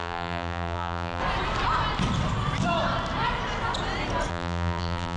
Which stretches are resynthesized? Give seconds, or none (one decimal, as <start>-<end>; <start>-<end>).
0.0-1.2; 4.3-5.2